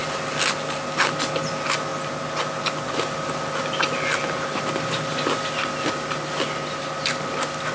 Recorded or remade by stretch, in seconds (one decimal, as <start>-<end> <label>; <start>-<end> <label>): 0.0-7.7 recorded